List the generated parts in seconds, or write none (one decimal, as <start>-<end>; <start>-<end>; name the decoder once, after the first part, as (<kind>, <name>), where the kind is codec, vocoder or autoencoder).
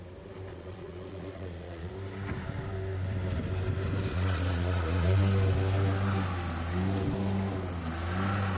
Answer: 0.5-1.9 (vocoder, Vocos); 4.1-5.2